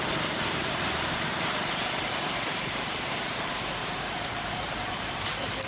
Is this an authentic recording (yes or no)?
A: no